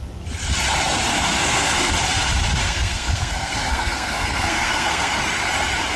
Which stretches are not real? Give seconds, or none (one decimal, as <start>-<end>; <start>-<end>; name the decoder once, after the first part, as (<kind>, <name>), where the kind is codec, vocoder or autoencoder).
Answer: 1.1-1.9 (codec, SNAC); 2.6-5.2